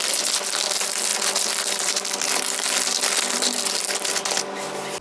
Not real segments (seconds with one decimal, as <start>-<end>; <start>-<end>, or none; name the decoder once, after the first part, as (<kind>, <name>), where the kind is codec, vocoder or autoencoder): 1.1-4.1 (vocoder, BigVGAN v2)